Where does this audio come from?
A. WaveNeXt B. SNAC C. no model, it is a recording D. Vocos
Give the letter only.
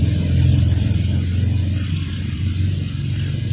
C